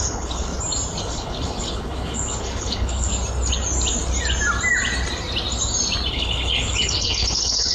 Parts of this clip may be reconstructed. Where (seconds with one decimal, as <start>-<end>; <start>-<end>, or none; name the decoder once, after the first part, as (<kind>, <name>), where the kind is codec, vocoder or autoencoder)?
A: 0.0-0.5 (codec, HILCodec); 1.0-3.1; 6.1-7.7